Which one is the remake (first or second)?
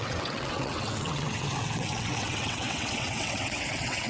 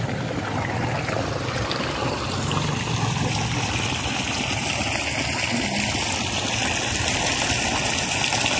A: first